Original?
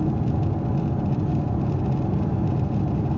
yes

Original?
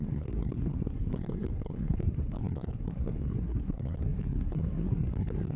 no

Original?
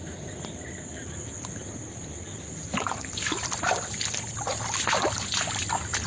no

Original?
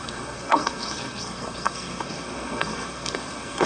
no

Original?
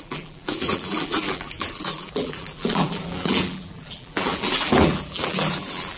no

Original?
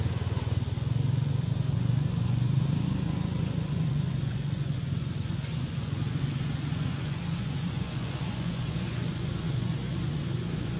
no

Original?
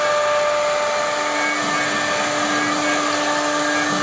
yes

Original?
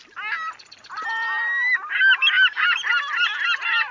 yes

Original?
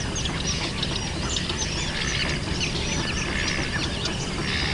yes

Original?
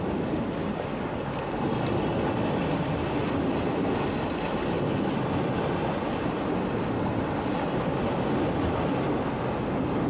yes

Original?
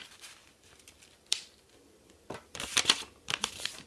no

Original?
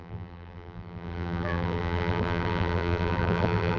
no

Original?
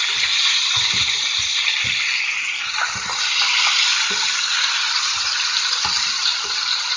yes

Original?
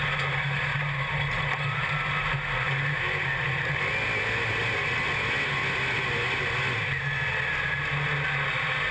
yes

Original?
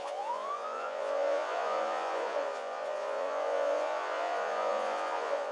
no